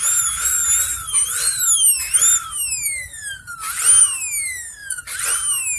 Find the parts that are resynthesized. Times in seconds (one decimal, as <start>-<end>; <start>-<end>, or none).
none